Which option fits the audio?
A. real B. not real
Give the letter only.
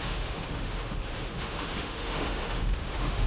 B